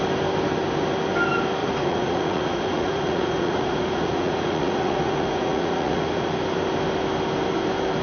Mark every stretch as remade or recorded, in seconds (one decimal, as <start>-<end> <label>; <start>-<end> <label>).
0.0-1.6 recorded; 1.6-6.3 remade; 6.3-8.0 recorded